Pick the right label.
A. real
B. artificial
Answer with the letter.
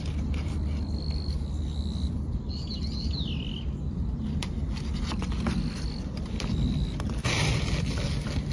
A